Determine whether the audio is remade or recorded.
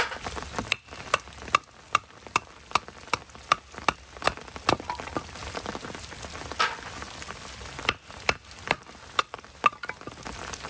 recorded